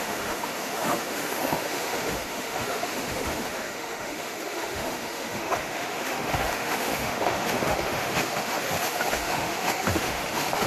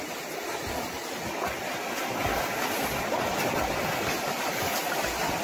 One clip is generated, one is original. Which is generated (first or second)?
first